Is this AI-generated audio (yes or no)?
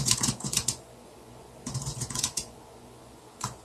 yes